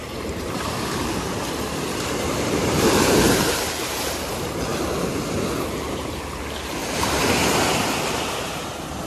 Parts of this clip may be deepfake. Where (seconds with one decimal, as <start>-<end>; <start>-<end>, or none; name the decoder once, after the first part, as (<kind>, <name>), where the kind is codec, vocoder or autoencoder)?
0.0-4.7 (vocoder, BigVGAN v2); 5.7-7.2; 8.0-9.1